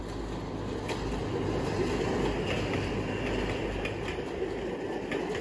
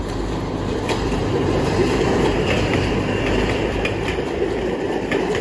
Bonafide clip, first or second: first